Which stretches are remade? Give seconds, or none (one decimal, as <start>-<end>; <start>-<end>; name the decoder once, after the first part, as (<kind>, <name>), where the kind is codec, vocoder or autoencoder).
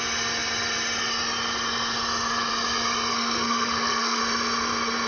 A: 3.1-4.2 (codec, SNAC)